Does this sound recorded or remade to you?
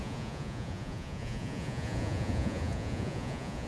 remade